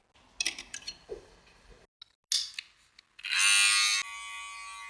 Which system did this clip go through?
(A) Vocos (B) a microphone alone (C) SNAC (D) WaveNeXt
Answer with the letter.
B